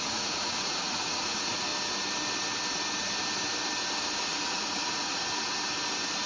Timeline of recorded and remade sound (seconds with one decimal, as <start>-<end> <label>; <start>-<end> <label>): 0.0-1.7 remade; 1.7-4.2 recorded; 4.2-5.2 remade; 5.2-6.3 recorded